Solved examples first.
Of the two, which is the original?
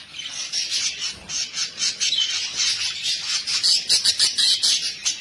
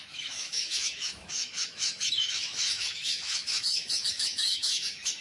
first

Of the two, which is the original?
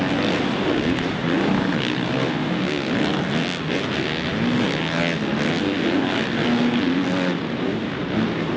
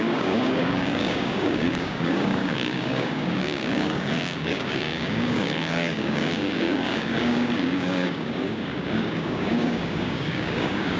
first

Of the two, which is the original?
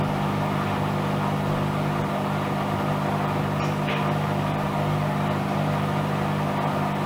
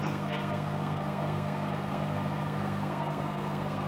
first